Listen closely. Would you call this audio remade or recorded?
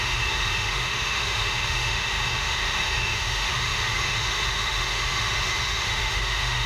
remade